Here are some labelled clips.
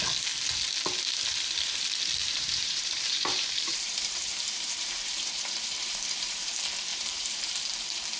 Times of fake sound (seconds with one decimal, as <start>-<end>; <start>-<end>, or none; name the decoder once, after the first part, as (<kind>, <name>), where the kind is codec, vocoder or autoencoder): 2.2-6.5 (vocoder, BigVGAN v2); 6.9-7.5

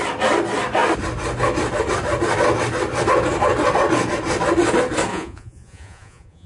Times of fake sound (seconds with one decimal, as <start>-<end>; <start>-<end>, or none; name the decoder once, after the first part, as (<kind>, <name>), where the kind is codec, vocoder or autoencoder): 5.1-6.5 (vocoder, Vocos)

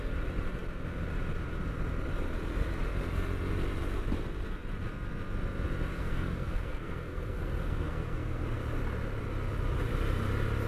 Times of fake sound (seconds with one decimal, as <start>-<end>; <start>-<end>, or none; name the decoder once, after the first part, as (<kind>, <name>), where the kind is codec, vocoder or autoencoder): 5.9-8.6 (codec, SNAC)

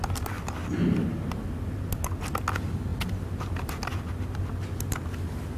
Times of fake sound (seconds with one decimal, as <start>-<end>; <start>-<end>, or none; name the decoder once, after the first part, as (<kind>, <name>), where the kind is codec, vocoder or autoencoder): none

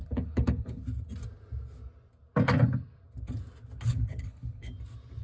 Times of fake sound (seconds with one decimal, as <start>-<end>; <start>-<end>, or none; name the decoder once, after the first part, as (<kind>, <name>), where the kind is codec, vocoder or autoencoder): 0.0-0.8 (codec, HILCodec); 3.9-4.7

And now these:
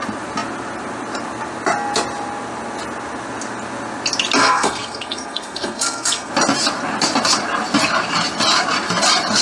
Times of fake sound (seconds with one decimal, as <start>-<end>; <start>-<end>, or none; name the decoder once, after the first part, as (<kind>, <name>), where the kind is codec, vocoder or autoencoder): 4.4-6.3 (codec, SNAC)

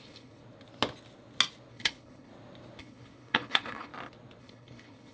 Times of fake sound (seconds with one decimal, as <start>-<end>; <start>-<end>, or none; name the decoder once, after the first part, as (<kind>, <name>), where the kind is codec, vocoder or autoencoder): 0.0-0.4 (codec, HILCodec); 1.7-2.3; 2.8-3.9; 4.4-5.1